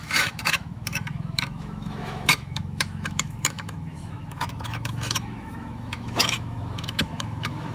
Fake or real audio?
fake